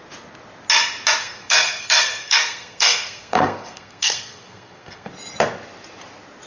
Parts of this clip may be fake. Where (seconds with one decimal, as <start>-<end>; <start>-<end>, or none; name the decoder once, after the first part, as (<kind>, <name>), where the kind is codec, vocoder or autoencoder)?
1.2-5.1 (codec, SNAC)